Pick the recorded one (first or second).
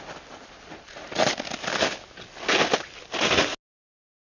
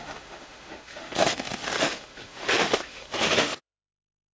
first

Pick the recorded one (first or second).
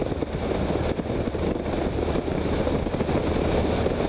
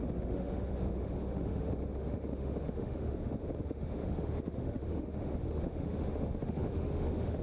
first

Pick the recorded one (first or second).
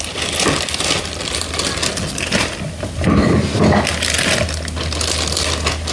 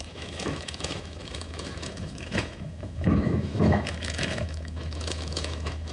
first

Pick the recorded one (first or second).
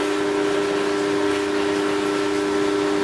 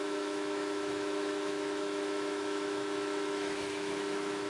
first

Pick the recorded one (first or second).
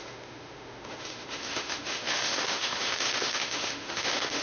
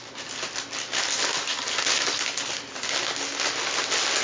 second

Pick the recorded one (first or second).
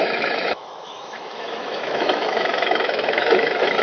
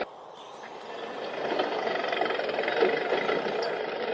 second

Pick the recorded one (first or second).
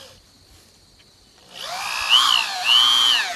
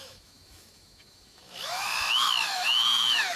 first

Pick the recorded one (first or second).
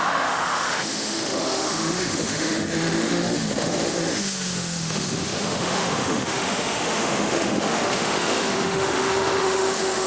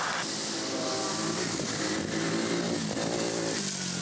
second